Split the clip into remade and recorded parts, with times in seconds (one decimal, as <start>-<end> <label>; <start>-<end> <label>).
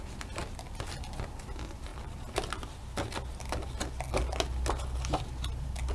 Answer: 0.0-5.9 recorded